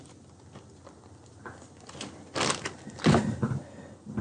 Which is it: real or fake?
real